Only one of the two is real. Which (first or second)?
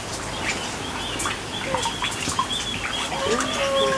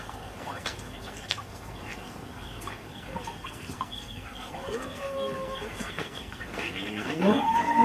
first